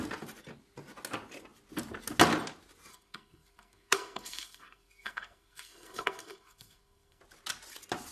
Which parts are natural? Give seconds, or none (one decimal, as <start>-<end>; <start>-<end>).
0.0-2.9; 7.2-8.1